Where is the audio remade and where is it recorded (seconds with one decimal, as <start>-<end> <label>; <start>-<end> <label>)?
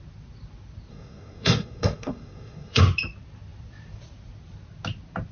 0.0-0.9 recorded; 0.9-2.8 remade; 2.8-5.3 recorded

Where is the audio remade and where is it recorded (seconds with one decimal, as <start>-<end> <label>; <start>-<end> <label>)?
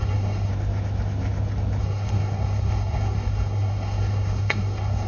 0.0-0.5 remade; 0.5-1.8 recorded; 1.8-5.1 remade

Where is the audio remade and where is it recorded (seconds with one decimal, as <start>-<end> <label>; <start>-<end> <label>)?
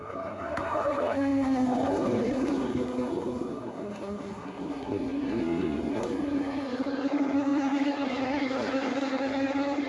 0.0-9.9 remade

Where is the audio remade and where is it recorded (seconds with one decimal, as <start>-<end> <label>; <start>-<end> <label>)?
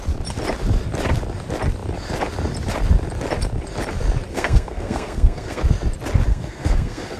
0.0-4.3 recorded; 4.3-5.6 remade; 5.6-6.3 recorded; 6.3-7.2 remade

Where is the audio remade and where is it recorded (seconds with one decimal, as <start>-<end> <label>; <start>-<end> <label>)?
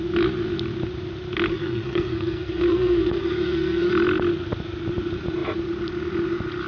0.0-1.5 recorded; 1.5-3.9 remade; 3.9-6.7 recorded